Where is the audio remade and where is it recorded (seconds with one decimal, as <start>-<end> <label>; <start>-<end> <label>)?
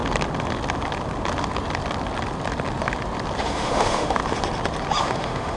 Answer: 0.0-3.4 recorded; 3.4-4.2 remade; 4.2-5.0 recorded; 5.0-5.6 remade